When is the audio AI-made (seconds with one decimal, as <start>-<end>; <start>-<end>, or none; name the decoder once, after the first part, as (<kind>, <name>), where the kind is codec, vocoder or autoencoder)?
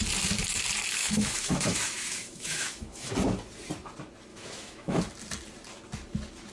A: 1.0-3.1 (autoencoder, DAC-VAE); 4.3-5.0